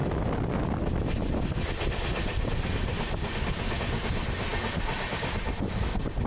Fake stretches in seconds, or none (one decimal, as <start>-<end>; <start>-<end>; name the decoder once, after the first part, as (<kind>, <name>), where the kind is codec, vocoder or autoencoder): none

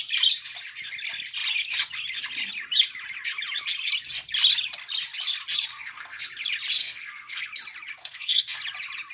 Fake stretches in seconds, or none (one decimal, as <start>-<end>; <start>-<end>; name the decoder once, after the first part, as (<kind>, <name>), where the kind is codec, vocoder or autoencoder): 5.7-6.2 (codec, SNAC); 6.8-7.4; 8.0-8.6

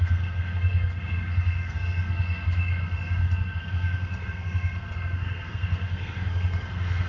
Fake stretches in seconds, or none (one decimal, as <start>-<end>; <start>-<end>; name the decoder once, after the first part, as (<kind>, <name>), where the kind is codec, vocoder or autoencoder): 0.0-7.1 (codec, SNAC)

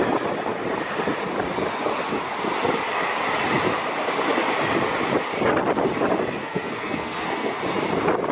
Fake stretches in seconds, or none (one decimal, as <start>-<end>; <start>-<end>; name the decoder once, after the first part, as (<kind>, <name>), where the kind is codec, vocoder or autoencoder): 6.4-7.6 (codec, SNAC)

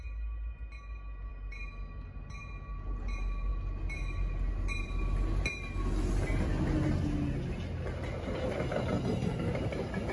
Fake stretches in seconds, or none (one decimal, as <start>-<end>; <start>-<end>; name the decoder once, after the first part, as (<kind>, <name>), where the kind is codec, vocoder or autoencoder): none

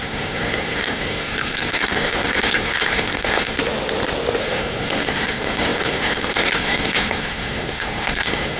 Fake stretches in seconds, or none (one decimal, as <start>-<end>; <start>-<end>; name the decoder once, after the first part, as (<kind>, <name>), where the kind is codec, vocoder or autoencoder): 0.0-3.6 (codec, SNAC); 4.4-8.6